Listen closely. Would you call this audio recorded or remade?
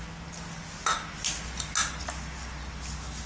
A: recorded